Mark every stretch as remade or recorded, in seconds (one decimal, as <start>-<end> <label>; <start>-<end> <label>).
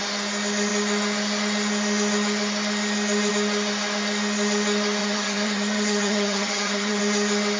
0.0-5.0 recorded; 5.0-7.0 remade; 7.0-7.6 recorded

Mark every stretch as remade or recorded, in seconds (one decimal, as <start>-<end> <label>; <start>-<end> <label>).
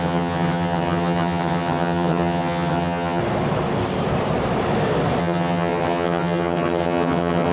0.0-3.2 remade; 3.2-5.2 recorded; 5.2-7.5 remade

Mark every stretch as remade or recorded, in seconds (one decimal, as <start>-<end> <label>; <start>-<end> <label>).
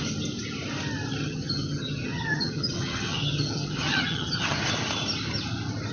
0.0-1.2 recorded; 1.2-4.7 remade; 4.7-5.9 recorded